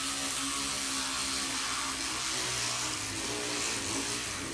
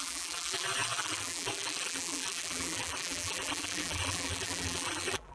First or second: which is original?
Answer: first